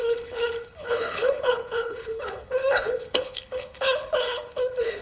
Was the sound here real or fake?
fake